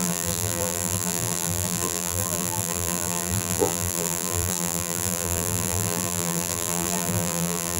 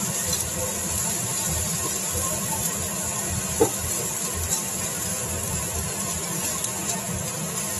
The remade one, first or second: first